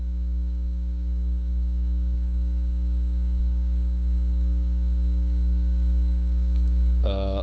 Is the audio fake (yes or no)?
yes